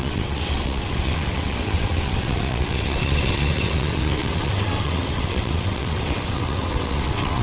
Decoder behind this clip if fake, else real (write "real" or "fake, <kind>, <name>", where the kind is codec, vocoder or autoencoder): fake, vocoder, WaveNeXt